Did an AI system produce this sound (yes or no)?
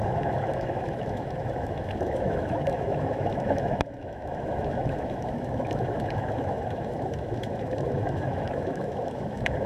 yes